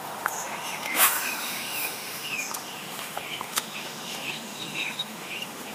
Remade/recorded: remade